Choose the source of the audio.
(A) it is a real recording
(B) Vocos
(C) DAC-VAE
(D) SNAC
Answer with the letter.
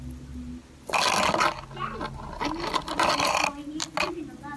A